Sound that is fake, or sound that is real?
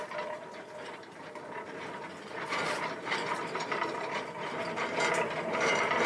fake